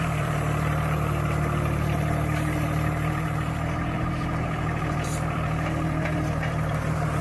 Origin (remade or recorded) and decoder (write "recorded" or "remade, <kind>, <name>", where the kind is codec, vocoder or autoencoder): remade, vocoder, BigVGAN v2